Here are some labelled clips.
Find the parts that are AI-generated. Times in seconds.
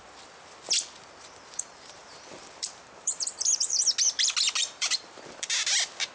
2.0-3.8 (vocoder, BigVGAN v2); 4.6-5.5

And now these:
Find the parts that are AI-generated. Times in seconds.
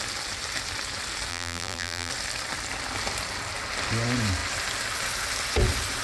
1.3-2.1 (vocoder, BigVGAN v2)